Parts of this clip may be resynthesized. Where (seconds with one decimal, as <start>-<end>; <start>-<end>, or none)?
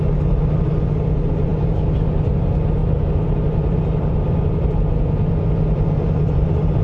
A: none